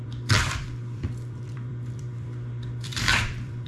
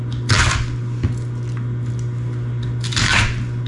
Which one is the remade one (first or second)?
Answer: first